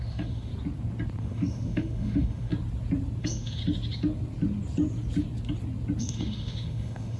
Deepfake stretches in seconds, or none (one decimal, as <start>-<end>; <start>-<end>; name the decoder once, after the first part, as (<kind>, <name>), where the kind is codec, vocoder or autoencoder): 0.0-0.5 (autoencoder, DAC-VAE); 1.2-2.5; 3.2-3.6; 6.0-7.2